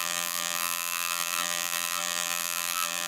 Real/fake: fake